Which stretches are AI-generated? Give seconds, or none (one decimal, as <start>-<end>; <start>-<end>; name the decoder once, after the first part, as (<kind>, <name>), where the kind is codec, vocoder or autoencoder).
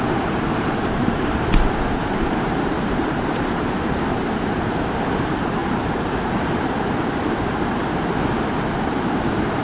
0.0-5.6 (vocoder, BigVGAN v2); 6.1-7.8; 8.9-9.6